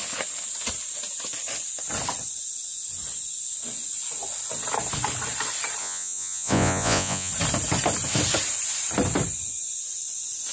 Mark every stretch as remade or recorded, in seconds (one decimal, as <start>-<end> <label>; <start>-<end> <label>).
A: 0.0-5.8 recorded; 5.8-7.3 remade; 7.3-10.5 recorded